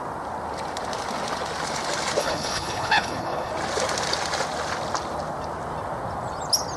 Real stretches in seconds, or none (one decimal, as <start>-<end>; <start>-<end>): 0.0-2.2; 3.5-6.8